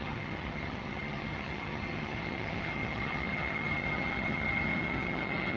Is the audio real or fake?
fake